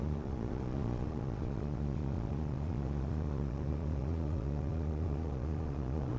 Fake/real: fake